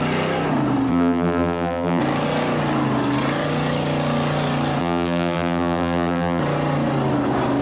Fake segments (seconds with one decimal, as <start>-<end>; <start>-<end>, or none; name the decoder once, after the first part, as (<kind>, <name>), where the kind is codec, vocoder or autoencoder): 0.9-2.0 (vocoder, BigVGAN v2); 4.8-6.4

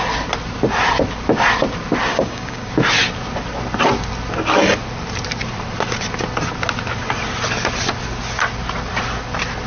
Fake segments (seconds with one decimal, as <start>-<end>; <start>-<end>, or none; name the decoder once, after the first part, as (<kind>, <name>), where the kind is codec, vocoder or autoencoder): 2.1-2.7 (codec, DAC)

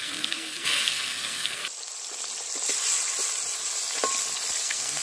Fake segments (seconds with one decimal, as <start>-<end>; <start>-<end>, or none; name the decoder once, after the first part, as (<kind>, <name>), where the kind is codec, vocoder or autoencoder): 0.0-1.6 (codec, SNAC); 4.6-5.0